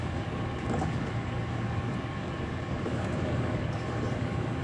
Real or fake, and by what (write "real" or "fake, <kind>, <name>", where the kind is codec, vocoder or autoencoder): fake, codec, DAC